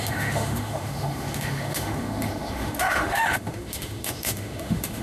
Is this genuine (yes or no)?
no